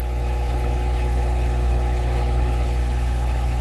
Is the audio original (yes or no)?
no